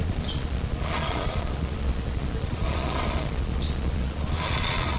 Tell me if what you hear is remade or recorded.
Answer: remade